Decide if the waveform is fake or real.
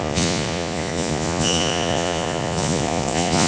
fake